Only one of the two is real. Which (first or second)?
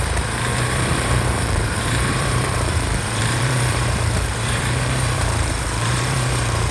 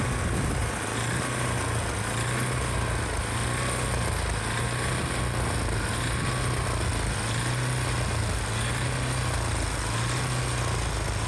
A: second